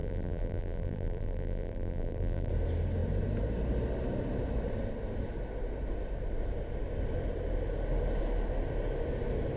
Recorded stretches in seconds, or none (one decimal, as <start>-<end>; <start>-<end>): 2.5-9.6

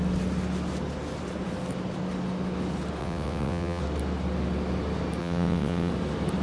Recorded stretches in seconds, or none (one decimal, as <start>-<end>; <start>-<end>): 0.0-3.0; 3.8-5.2; 5.9-6.4

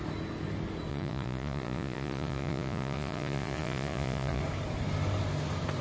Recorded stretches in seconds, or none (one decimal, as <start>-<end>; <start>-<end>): 0.0-0.9; 4.4-5.8